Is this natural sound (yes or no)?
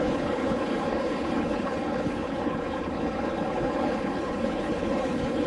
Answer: no